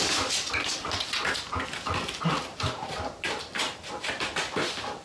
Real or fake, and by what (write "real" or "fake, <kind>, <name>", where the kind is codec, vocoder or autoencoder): real